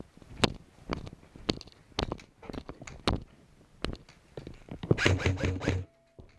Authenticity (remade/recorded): recorded